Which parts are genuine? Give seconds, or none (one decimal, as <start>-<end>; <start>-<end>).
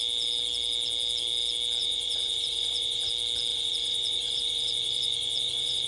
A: 0.0-1.8; 3.1-3.5